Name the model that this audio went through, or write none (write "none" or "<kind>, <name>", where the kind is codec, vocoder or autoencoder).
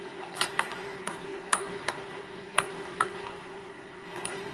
codec, SNAC